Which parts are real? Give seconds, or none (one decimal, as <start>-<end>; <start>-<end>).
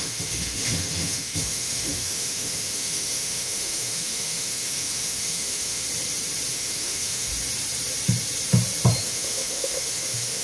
5.8-6.5; 7.3-9.0